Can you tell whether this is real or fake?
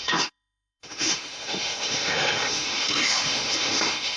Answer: fake